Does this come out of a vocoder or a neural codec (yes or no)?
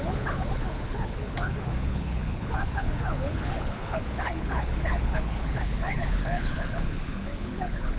yes